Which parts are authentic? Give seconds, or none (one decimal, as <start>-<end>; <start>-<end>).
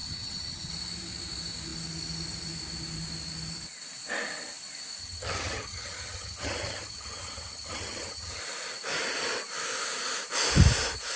0.7-5.0; 8.4-11.2